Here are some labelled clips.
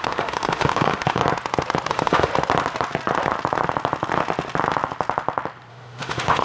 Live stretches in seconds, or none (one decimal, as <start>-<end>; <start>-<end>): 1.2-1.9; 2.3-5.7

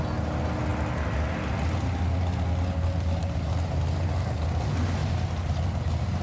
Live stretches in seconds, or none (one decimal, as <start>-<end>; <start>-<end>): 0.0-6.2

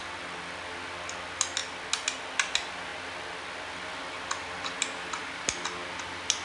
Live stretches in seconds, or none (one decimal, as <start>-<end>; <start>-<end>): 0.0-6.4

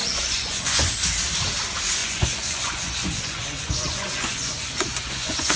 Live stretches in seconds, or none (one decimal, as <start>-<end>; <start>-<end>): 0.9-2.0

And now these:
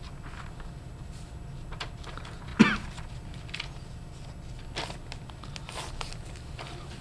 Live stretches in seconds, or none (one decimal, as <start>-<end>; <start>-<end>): 0.0-7.0

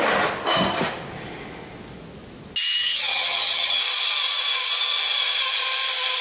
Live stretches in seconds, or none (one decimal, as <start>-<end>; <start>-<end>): 0.0-2.8; 3.8-6.2

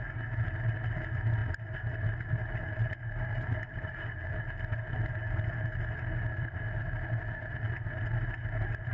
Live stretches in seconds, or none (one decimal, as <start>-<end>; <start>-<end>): 0.0-8.9